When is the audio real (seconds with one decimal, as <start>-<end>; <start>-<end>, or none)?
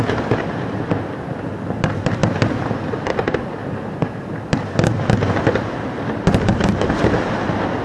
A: 2.2-3.2; 3.6-5.5